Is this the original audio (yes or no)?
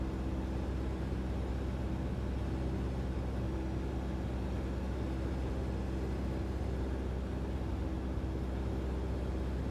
yes